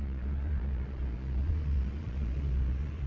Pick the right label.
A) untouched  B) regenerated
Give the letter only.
B